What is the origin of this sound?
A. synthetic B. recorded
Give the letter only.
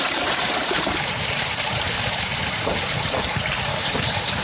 A